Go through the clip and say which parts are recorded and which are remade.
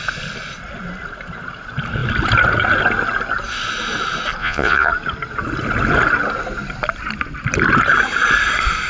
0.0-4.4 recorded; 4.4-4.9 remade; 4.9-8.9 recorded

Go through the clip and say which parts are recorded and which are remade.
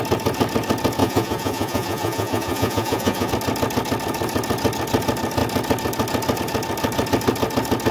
0.0-1.0 recorded; 1.0-3.3 remade; 3.3-7.9 recorded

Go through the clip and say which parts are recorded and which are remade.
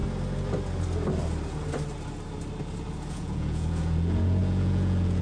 0.0-3.1 recorded; 3.1-5.2 remade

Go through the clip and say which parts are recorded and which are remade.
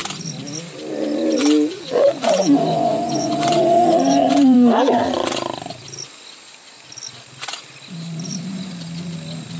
0.0-1.4 recorded; 1.4-4.9 remade; 4.9-9.6 recorded